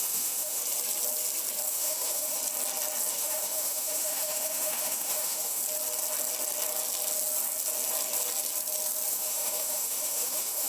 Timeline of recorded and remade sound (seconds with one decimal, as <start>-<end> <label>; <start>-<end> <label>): 0.0-0.6 remade; 0.6-1.7 recorded; 1.7-2.4 remade; 2.4-3.1 recorded; 3.1-5.6 remade; 5.6-9.1 recorded; 9.1-10.7 remade